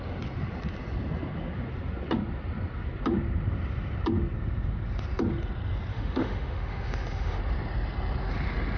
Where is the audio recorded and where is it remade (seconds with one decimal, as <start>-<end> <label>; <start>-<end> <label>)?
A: 0.0-5.9 recorded; 5.9-7.4 remade; 7.4-8.8 recorded